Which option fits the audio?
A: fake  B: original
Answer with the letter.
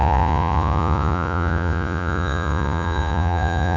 A